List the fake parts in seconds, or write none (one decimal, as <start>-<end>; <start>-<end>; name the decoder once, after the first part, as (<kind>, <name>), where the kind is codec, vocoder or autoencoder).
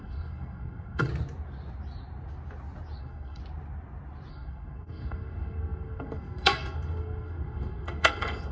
0.0-1.1 (codec, SNAC); 3.0-3.4; 4.3-8.5